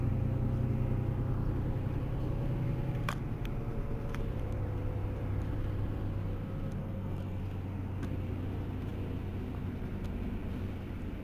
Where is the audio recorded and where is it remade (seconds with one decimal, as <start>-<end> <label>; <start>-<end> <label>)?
0.0-6.8 recorded; 6.8-7.4 remade; 7.4-11.2 recorded

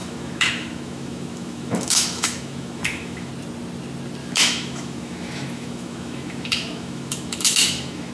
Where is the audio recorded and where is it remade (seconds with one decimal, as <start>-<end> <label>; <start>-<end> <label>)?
0.0-3.3 remade; 3.3-4.2 recorded; 4.2-8.1 remade

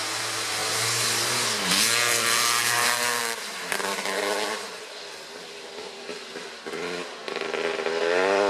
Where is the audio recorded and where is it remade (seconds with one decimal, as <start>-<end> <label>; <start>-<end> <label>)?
0.0-8.5 recorded